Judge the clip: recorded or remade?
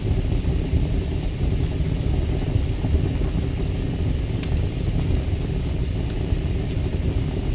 recorded